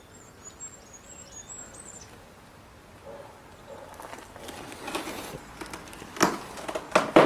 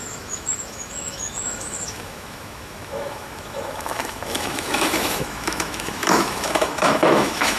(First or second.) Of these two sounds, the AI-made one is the second